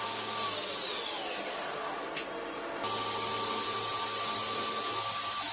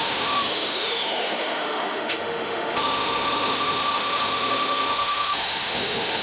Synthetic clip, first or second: second